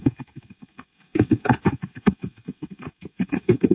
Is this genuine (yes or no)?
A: no